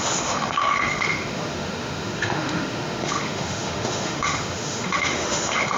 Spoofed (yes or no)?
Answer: yes